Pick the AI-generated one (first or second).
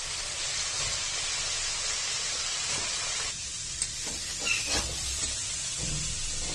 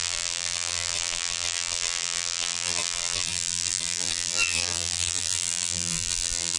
second